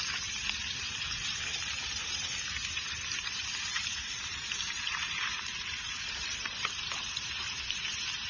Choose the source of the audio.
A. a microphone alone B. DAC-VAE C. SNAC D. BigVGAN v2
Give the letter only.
D